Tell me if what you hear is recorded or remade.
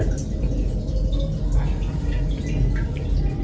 recorded